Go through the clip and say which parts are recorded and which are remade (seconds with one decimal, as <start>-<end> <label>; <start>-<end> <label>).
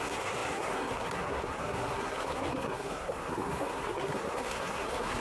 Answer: 0.0-5.2 remade